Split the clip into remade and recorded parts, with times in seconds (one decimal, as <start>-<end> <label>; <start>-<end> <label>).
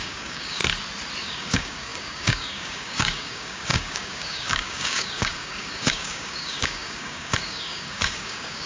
0.0-0.6 remade; 0.6-1.2 recorded; 1.2-8.7 remade